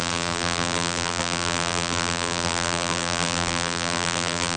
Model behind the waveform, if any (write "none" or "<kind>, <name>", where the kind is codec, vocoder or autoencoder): vocoder, BigVGAN v2